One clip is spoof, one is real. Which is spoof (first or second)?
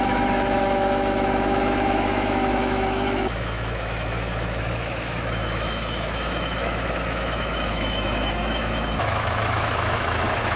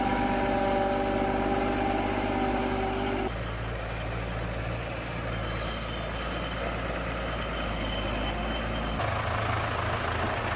first